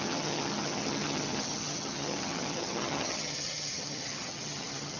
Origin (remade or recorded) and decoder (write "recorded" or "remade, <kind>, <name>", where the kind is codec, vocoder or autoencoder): remade, vocoder, HiFi-GAN